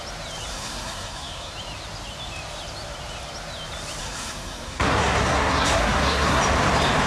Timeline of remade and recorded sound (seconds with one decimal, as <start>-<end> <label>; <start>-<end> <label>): 0.0-0.5 recorded; 0.5-1.5 remade; 1.5-4.0 recorded; 4.0-6.4 remade; 6.4-7.1 recorded